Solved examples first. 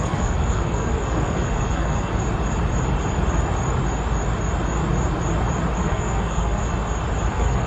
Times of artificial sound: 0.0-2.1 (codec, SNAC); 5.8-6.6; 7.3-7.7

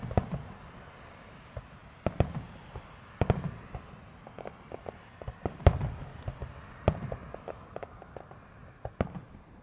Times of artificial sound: none

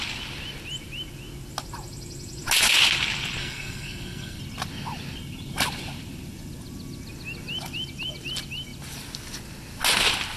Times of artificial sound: 3.4-4.4 (codec, SNAC)

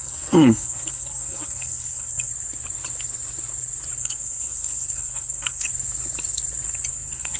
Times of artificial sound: 0.0-2.3 (codec, SNAC); 4.0-5.7; 6.9-7.4